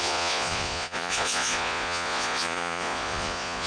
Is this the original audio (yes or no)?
no